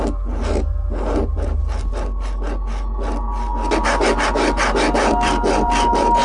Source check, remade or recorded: recorded